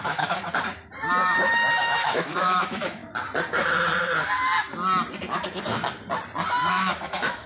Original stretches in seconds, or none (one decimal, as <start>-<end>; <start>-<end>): 0.4-1.8; 3.0-6.7